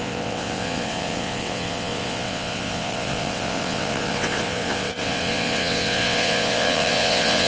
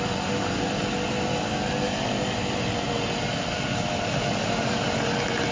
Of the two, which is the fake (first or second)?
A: first